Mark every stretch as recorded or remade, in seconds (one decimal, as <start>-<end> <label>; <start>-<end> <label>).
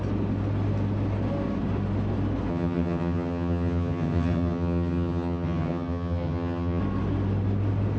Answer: 0.0-2.5 recorded; 2.5-6.8 remade; 6.8-8.0 recorded